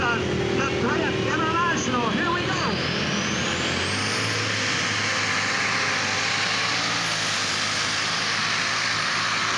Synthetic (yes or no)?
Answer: no